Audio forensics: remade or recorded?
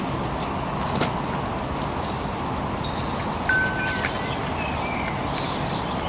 recorded